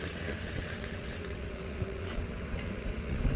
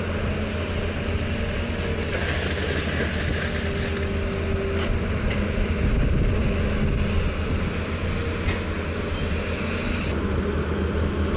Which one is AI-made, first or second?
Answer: first